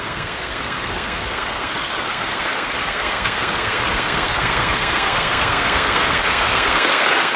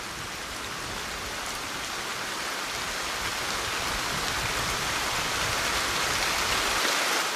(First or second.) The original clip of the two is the second